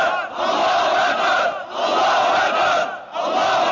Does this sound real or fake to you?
real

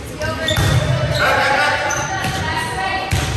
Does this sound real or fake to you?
real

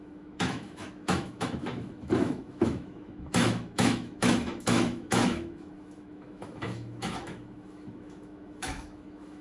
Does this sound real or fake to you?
fake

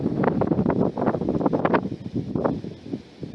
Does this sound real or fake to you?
real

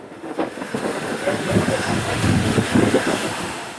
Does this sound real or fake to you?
fake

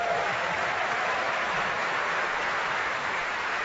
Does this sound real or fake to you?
fake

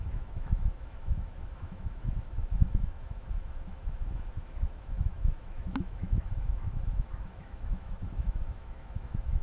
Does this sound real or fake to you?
fake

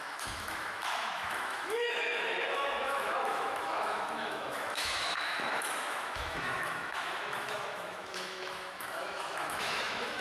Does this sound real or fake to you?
fake